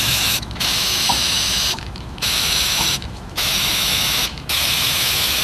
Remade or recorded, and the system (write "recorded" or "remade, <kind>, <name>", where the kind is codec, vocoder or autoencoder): remade, autoencoder, DAC-VAE